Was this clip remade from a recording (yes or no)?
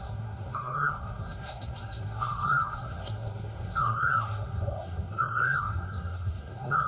yes